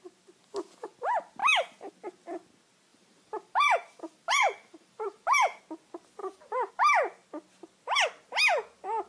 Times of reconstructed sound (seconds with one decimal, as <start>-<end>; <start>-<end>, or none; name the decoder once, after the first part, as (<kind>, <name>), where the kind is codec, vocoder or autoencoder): 1.4-1.9 (vocoder, BigVGAN v2); 2.9-5.6; 6.2-6.7